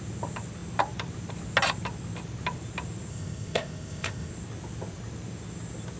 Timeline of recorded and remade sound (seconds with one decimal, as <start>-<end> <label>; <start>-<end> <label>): 0.0-3.1 recorded; 3.1-4.3 remade; 4.3-6.0 recorded